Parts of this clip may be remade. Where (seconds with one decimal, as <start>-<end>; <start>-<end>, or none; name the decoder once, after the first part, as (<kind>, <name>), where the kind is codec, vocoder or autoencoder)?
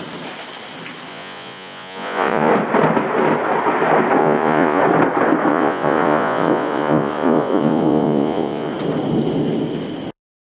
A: 1.1-2.5 (vocoder, Vocos); 4.2-4.8; 5.5-8.7